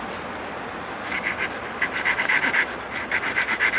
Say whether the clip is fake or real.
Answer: real